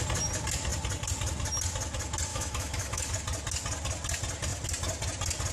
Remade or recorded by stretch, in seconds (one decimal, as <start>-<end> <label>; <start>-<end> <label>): 0.0-2.3 recorded; 2.3-3.1 remade; 3.1-5.5 recorded